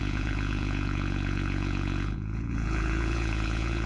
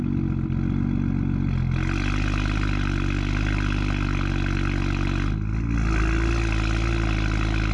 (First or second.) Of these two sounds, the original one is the second